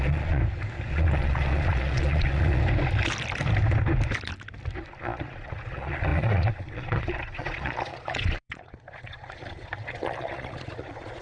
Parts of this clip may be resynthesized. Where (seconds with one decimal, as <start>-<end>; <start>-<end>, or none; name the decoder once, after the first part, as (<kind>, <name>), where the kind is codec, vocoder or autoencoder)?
0.0-0.4 (vocoder, Vocos); 0.9-2.6; 5.0-11.2